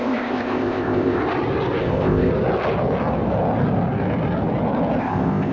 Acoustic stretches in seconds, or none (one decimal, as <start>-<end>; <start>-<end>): 1.2-1.8; 2.3-5.0